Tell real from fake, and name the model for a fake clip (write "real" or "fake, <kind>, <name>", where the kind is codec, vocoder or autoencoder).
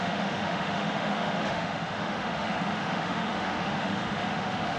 fake, autoencoder, DAC-VAE